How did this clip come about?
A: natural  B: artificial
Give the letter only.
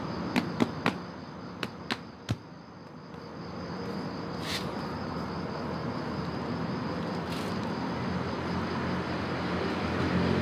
A